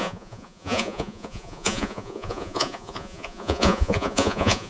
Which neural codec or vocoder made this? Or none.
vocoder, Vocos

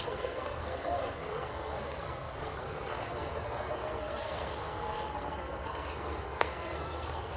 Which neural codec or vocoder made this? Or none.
codec, SNAC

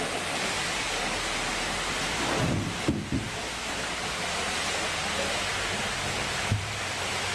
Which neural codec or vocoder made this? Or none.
none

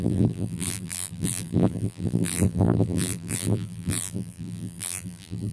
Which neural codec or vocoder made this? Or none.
vocoder, BigVGAN v2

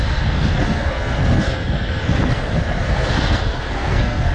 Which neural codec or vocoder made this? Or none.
codec, SNAC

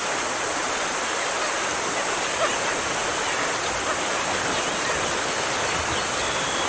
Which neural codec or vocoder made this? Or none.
none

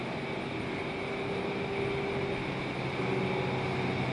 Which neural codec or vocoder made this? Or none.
none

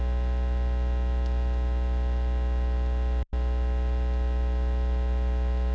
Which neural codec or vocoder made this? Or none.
none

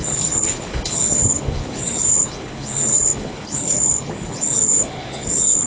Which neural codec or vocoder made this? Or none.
codec, HILCodec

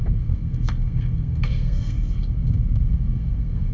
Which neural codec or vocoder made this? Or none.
codec, SNAC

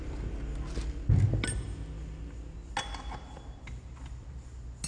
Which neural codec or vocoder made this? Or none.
none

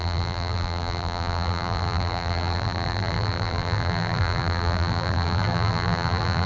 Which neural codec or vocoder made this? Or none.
vocoder, BigVGAN v2